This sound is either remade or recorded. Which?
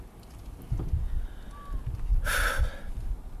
recorded